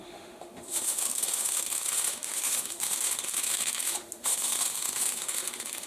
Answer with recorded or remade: remade